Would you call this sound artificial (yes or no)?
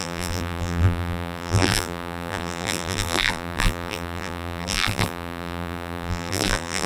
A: yes